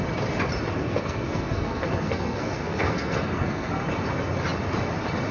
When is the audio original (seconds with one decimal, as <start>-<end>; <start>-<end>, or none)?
0.0-0.7; 3.7-5.3